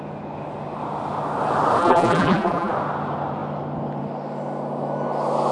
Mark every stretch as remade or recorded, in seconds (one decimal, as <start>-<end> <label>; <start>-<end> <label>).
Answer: 0.0-1.8 recorded; 1.8-2.7 remade; 2.7-5.5 recorded